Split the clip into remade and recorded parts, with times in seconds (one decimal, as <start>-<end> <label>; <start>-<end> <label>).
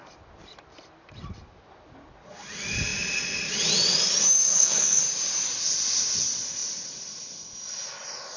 0.0-4.5 recorded; 4.5-5.0 remade; 5.0-8.4 recorded